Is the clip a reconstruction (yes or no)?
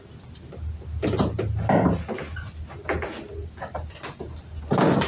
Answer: no